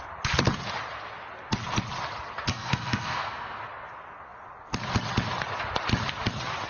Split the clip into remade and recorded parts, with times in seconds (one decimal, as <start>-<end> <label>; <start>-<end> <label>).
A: 0.0-2.5 recorded; 2.5-3.6 remade; 3.6-6.7 recorded